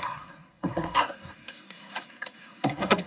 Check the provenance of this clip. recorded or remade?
remade